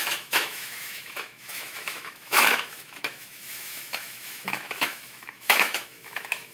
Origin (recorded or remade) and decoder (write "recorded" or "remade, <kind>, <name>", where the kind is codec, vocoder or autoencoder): remade, autoencoder, DAC-VAE